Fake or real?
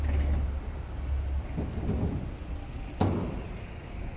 real